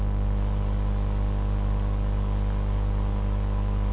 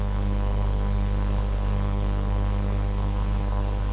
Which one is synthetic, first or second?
second